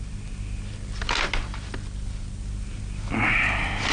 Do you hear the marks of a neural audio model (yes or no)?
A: no